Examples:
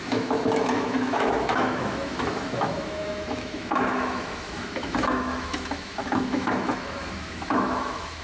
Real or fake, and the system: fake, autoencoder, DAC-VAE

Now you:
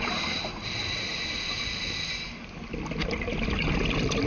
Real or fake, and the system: real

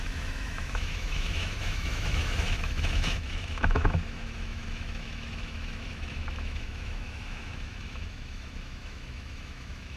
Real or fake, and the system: fake, autoencoder, DAC-VAE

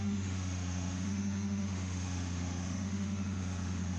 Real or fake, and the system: fake, autoencoder, DAC-VAE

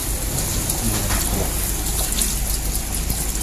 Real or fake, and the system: real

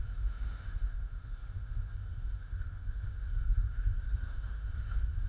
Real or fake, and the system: fake, autoencoder, DAC-VAE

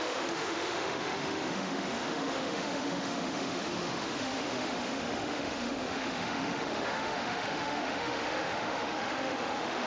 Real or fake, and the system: fake, autoencoder, DAC-VAE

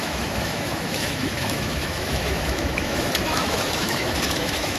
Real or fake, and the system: fake, autoencoder, DAC-VAE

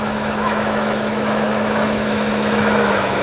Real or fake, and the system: fake, autoencoder, DAC-VAE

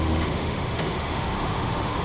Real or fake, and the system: fake, autoencoder, DAC-VAE